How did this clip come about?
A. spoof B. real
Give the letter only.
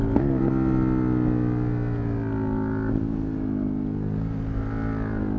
B